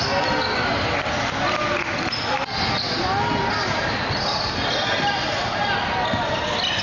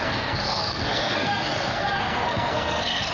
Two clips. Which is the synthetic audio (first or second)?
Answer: second